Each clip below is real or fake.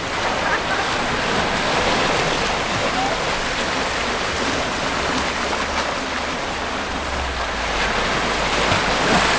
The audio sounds real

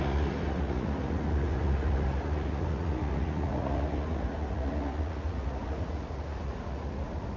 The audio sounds fake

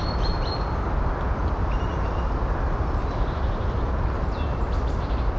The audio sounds real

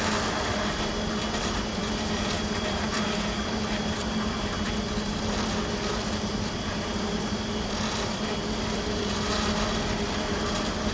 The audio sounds real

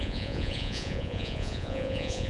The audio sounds fake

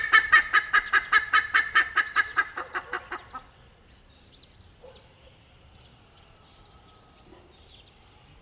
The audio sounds real